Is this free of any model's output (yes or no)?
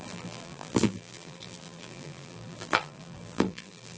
no